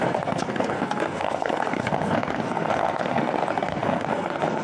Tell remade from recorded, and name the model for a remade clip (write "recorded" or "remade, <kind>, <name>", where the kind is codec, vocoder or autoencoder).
remade, codec, SNAC